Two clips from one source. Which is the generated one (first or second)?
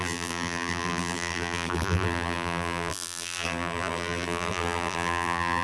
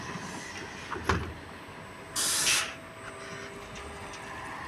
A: first